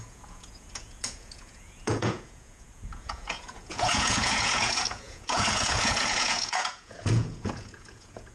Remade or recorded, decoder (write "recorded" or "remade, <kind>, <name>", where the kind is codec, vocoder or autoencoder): remade, vocoder, Vocos